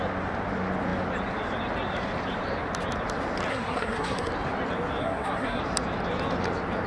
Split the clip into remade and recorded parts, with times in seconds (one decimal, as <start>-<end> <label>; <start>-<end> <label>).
0.0-3.5 recorded; 3.5-4.3 remade; 4.3-5.0 recorded; 5.0-5.6 remade; 5.6-6.9 recorded